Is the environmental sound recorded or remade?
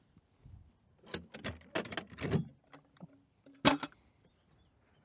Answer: recorded